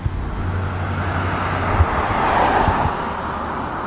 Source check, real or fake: real